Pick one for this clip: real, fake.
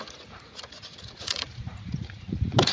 fake